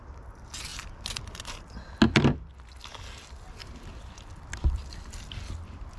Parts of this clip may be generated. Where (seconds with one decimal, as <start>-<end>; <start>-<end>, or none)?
0.7-1.5; 3.6-5.1